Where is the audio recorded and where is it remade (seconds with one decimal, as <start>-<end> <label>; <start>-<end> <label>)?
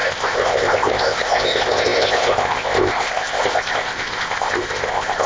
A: 0.0-5.3 remade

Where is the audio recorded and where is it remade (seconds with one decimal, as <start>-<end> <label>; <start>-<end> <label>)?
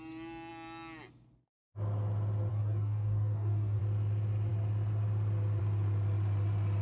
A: 0.0-2.5 recorded; 2.5-3.8 remade; 3.8-6.8 recorded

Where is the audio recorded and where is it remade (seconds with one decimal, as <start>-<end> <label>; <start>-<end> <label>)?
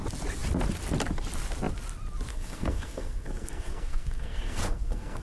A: 0.0-2.3 recorded; 2.3-5.2 remade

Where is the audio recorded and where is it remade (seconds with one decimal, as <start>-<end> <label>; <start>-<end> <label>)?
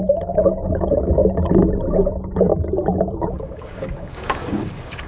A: 0.0-1.2 remade; 1.2-1.9 recorded; 1.9-2.5 remade; 2.5-3.0 recorded; 3.0-5.1 remade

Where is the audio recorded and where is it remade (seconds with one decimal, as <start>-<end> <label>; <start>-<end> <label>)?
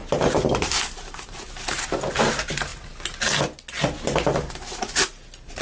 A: 0.0-1.9 remade; 1.9-5.6 recorded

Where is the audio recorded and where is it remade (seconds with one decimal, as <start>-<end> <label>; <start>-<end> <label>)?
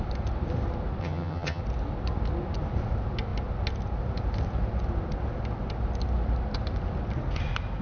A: 0.0-1.0 recorded; 1.0-1.6 remade; 1.6-7.8 recorded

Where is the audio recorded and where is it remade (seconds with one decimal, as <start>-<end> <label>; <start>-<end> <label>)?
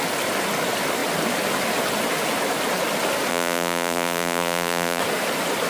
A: 0.0-3.3 recorded; 3.3-5.0 remade; 5.0-5.7 recorded